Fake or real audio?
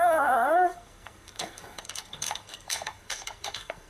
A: fake